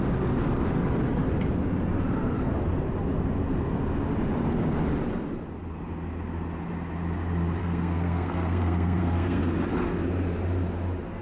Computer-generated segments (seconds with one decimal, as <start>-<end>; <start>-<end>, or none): 7.6-9.4